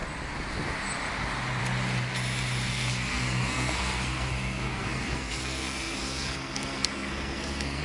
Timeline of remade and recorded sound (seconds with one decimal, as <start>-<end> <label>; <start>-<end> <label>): 0.0-2.7 recorded; 2.7-7.8 remade

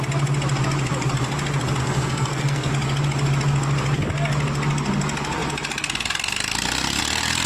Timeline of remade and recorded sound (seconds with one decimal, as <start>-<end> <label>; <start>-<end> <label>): 0.0-1.8 recorded; 1.8-2.7 remade; 2.7-7.5 recorded

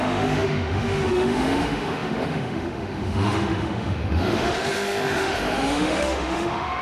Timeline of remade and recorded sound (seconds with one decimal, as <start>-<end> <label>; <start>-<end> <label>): 0.0-6.8 remade

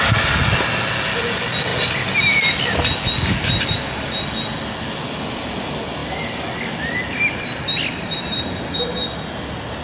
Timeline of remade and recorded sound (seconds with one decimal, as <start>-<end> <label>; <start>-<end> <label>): 0.0-9.8 recorded

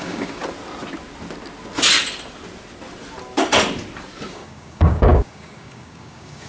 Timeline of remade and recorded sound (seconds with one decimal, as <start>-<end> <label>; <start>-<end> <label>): 0.0-0.4 remade; 0.4-4.3 recorded; 4.3-6.5 remade

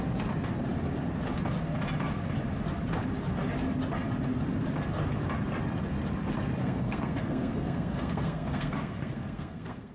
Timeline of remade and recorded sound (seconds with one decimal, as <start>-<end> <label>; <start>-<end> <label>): 0.0-6.6 recorded; 6.6-9.9 remade